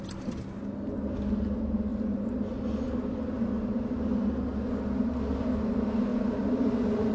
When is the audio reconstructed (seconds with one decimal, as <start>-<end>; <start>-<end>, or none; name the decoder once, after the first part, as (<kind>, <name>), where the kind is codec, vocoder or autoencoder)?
none